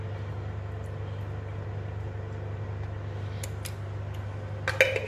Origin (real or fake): real